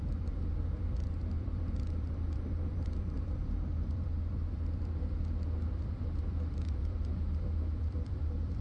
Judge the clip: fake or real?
fake